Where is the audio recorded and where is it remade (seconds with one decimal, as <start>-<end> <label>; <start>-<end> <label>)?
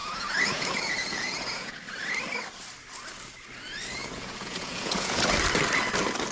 0.0-1.7 remade; 1.7-4.0 recorded; 4.0-5.2 remade; 5.2-6.3 recorded